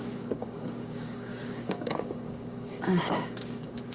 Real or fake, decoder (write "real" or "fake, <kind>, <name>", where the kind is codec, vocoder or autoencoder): fake, codec, DAC